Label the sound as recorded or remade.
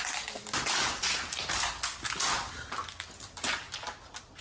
recorded